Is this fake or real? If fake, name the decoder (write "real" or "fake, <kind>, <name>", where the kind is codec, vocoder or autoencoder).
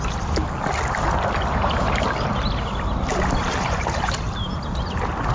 real